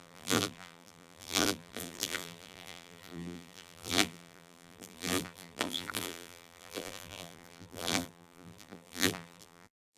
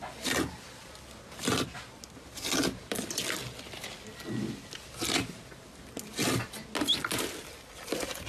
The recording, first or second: second